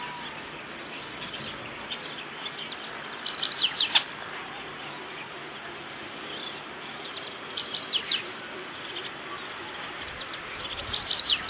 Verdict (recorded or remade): remade